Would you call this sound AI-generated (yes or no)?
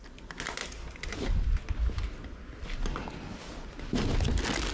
no